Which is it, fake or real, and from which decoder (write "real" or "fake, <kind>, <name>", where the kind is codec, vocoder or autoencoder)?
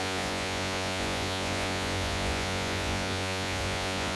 fake, vocoder, Vocos